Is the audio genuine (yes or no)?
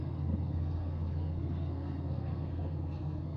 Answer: no